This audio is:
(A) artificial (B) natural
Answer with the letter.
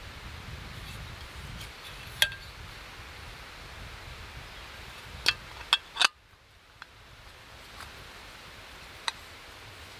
B